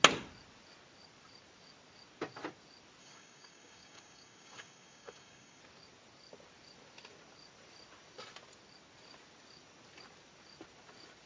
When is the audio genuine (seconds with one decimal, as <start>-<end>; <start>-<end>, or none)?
0.0-3.0; 5.6-11.3